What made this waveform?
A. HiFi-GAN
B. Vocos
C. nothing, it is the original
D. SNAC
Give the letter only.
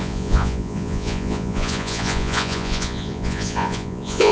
B